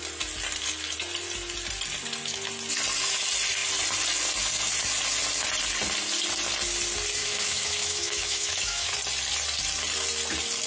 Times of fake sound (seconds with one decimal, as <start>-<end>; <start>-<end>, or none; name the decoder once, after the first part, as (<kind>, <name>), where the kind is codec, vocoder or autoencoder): 7.2-8.9 (autoencoder, DAC-VAE)